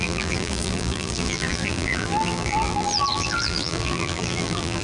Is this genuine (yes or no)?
no